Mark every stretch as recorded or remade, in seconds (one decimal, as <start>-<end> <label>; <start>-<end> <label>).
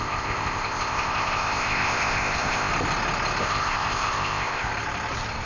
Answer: 0.0-2.7 remade; 2.7-3.4 recorded; 3.4-4.7 remade; 4.7-5.5 recorded